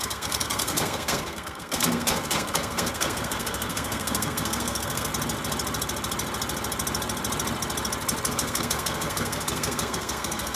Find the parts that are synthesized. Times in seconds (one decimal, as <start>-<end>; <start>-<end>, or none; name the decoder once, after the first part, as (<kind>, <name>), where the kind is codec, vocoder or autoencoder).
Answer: 0.0-5.1 (codec, SNAC); 8.3-10.6

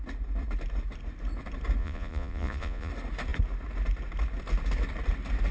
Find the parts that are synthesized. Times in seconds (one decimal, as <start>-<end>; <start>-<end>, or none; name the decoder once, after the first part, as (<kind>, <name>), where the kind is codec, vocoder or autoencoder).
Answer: 1.8-2.9 (vocoder, Vocos)

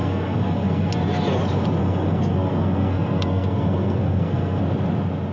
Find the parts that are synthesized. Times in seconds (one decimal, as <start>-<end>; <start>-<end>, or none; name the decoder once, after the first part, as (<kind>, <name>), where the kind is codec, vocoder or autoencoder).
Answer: 0.0-0.9 (codec, SNAC); 1.8-4.6

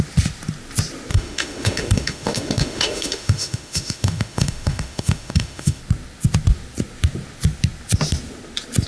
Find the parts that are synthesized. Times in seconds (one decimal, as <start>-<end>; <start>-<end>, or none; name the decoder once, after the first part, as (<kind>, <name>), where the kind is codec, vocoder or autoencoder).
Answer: 1.1-5.8 (autoencoder, DAC-VAE)

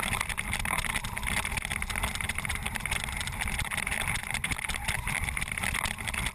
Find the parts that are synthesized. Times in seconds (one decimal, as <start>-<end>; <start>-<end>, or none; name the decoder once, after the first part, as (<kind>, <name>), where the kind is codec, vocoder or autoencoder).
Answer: 4.2-5.8 (vocoder, BigVGAN v2)

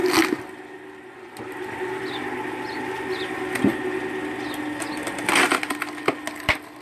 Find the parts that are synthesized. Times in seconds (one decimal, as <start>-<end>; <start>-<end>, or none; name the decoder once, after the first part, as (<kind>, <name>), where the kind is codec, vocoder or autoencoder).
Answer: none